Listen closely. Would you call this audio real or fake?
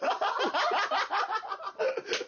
real